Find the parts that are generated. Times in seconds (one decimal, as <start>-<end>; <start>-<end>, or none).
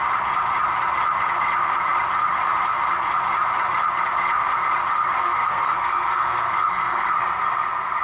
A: 5.2-7.1